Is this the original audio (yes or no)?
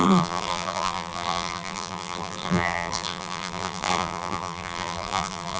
no